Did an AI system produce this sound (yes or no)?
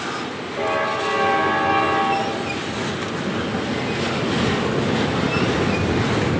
no